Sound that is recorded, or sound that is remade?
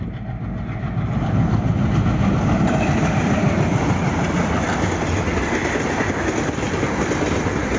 recorded